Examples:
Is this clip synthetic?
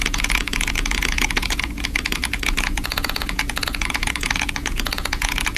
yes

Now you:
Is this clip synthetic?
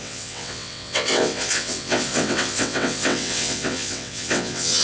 yes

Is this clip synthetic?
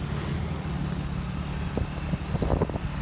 no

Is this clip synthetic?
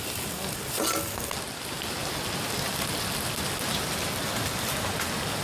no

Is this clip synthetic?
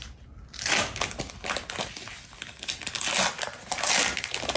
no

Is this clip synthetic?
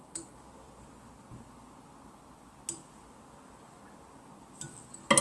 no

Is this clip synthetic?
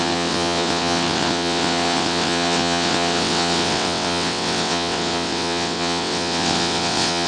yes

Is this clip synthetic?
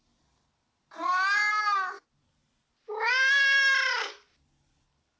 no